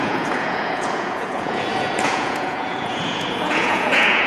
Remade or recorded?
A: remade